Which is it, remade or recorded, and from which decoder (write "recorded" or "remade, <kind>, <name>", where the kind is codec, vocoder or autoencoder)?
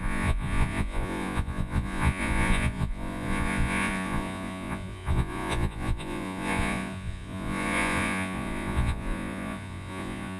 remade, vocoder, Vocos